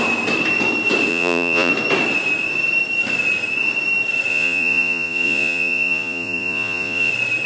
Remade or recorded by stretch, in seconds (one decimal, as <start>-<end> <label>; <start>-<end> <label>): 0.0-1.1 recorded; 1.1-1.7 remade; 1.7-4.3 recorded; 4.3-7.1 remade; 7.1-7.5 recorded